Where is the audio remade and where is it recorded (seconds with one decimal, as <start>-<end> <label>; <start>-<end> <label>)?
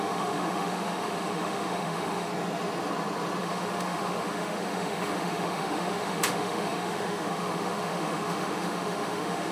0.0-2.3 remade; 2.3-3.4 recorded; 3.4-9.5 remade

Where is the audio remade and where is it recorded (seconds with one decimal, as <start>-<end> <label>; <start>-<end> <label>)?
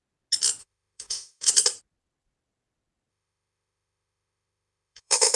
0.0-0.6 recorded; 0.6-1.5 remade; 1.5-3.1 recorded; 3.1-5.4 remade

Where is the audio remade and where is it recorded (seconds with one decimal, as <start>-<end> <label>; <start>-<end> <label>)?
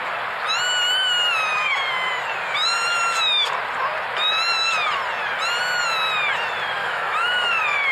0.0-6.8 recorded; 6.8-7.5 remade; 7.5-7.9 recorded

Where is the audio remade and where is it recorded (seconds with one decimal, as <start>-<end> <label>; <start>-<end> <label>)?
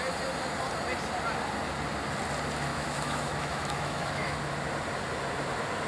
0.0-2.7 recorded; 2.7-4.4 remade; 4.4-5.9 recorded